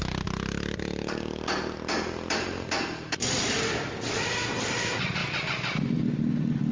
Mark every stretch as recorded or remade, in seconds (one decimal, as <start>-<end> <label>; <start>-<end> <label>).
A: 0.0-5.2 recorded; 5.2-6.0 remade; 6.0-6.7 recorded